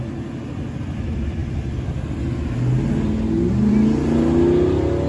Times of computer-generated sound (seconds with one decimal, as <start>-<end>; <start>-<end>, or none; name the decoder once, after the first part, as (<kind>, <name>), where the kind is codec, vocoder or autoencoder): none